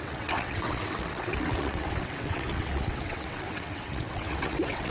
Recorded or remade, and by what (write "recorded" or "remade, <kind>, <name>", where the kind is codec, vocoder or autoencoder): remade, vocoder, WaveNeXt